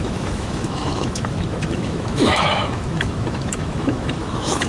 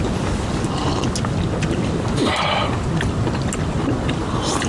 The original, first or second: second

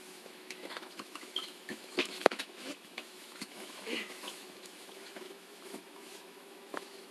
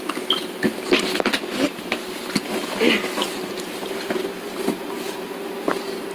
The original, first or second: second